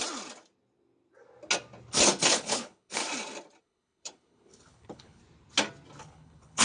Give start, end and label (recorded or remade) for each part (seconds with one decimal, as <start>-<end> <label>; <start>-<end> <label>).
0.0-2.3 recorded; 2.3-3.0 remade; 3.0-3.6 recorded; 3.6-5.2 remade; 5.2-6.0 recorded; 6.0-6.6 remade